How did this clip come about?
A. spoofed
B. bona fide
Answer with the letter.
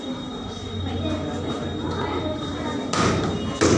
B